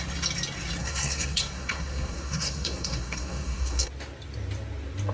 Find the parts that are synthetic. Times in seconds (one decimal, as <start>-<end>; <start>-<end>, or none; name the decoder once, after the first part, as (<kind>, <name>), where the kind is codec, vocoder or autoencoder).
0.8-3.9 (codec, SNAC)

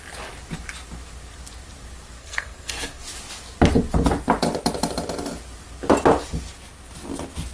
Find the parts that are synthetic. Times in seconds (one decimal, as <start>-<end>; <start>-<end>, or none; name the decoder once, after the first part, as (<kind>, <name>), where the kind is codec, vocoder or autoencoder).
2.2-3.0 (codec, SNAC)

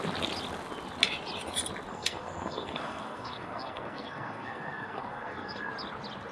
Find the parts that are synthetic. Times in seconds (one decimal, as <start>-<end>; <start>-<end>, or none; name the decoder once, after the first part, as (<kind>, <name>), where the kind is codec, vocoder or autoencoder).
1.9-5.7 (codec, SNAC)

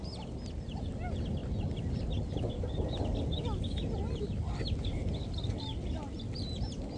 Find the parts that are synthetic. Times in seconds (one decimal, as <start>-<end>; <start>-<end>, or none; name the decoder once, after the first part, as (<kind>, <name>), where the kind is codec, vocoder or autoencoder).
none

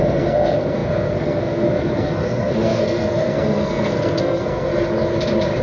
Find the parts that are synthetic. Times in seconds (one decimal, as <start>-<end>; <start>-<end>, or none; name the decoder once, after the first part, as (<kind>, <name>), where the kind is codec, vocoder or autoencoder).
0.0-4.7 (codec, SNAC)

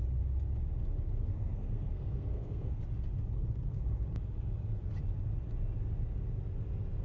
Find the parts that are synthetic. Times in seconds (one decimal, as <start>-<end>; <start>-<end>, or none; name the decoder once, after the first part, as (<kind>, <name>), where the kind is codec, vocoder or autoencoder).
1.3-2.8 (codec, SNAC)

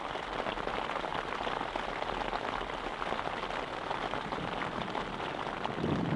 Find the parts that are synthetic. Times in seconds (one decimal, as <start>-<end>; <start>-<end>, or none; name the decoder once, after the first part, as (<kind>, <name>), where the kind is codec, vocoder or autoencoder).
none